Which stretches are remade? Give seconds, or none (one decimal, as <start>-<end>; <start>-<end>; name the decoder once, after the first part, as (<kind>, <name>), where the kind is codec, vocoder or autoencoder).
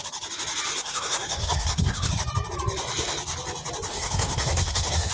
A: 0.7-2.1 (codec, SNAC); 3.9-5.1